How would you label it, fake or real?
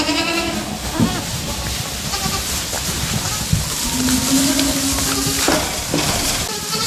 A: real